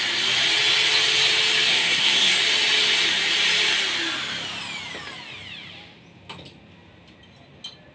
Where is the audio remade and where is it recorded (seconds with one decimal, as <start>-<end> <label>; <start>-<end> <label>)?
0.0-1.7 recorded; 1.7-2.4 remade; 2.4-7.9 recorded